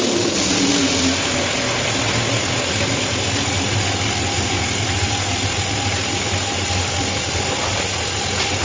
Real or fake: real